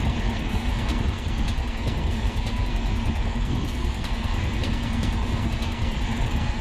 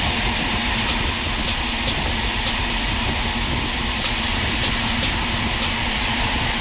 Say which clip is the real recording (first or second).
second